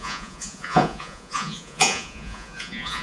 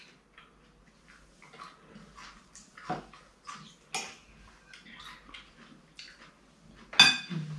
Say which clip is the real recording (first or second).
second